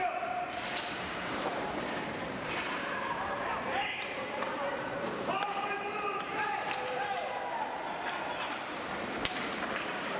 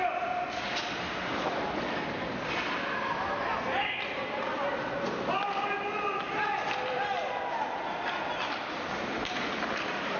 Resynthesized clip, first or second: first